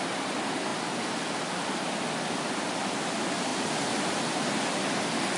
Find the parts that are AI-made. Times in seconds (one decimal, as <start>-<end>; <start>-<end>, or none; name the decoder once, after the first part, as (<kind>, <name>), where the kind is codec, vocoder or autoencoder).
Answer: none